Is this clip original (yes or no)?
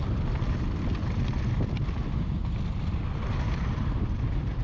yes